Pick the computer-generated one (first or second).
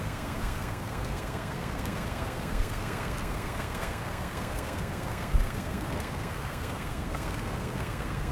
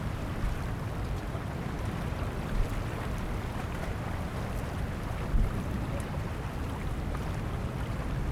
first